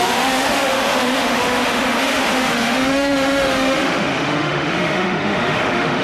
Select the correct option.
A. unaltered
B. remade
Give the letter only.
B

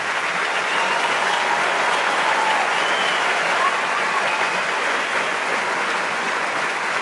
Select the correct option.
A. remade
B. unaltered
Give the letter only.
A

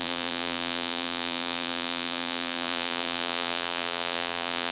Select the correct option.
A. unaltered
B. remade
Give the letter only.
B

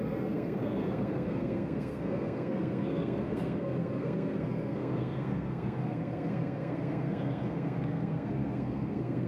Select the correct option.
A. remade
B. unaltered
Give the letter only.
A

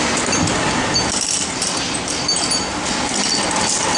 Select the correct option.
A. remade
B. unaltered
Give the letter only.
B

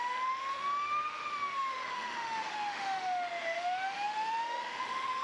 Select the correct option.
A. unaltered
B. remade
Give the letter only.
B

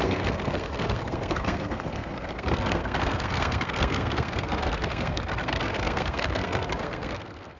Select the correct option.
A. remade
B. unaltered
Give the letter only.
A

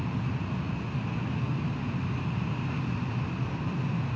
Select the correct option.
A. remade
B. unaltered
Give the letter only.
B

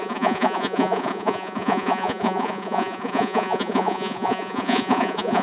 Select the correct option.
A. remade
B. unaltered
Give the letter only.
A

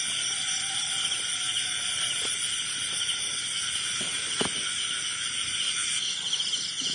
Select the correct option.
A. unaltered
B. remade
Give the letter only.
A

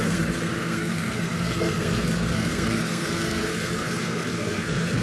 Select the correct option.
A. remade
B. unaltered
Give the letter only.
A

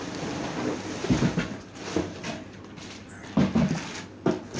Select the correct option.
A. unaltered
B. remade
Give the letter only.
A